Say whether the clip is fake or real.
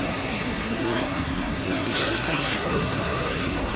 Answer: fake